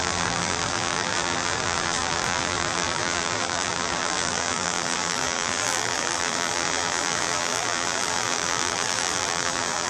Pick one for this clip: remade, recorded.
remade